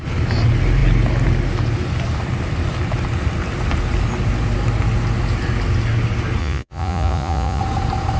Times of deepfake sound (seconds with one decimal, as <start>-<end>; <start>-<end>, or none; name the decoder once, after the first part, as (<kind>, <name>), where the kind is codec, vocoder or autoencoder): 6.4-7.6 (vocoder, Vocos)